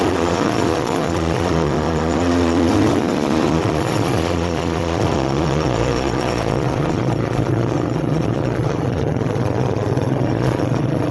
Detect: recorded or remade remade